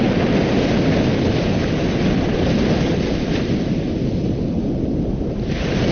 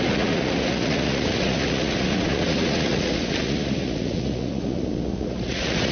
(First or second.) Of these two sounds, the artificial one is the second